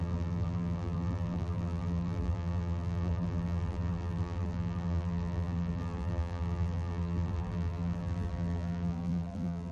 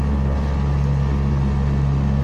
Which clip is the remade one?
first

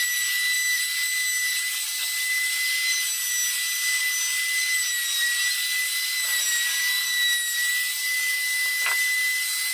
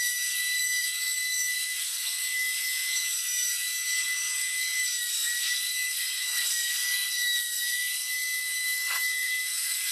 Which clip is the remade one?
second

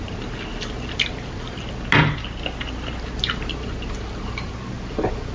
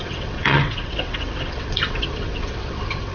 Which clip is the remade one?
second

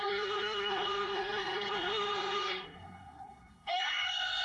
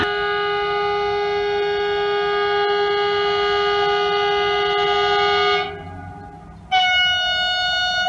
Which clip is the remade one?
first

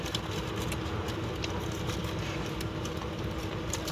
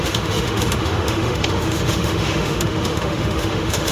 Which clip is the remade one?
second